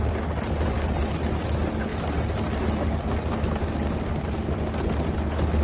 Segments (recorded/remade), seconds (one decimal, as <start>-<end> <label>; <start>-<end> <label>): 0.0-5.6 recorded